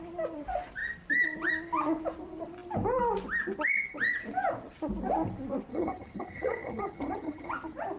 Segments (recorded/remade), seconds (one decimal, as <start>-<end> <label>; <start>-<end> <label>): 0.0-5.7 recorded; 5.7-7.5 remade; 7.5-8.0 recorded